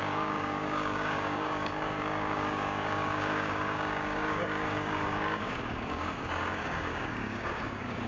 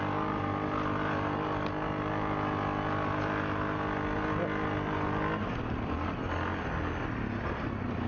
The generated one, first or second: first